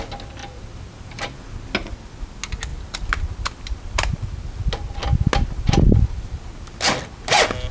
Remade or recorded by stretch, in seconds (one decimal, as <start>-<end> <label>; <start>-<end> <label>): 0.0-0.4 recorded; 0.4-1.2 remade; 1.2-7.7 recorded